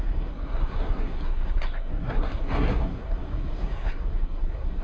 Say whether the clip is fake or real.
fake